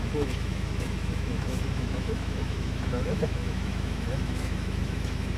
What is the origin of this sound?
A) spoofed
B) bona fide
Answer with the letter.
A